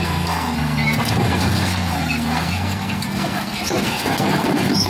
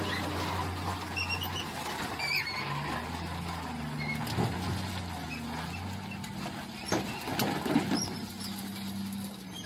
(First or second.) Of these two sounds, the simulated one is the first